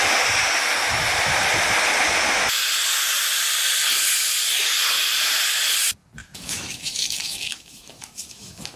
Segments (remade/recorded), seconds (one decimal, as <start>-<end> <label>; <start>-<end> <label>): 0.0-6.2 recorded; 6.2-8.8 remade